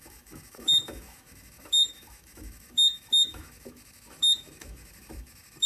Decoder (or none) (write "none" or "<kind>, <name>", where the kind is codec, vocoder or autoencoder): autoencoder, DAC-VAE